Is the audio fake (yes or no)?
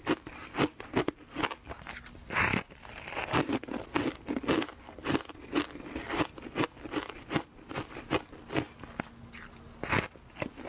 no